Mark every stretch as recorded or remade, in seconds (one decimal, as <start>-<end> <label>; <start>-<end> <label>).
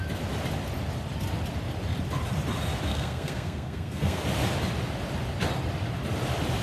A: 0.0-2.9 recorded; 2.9-4.2 remade; 4.2-6.6 recorded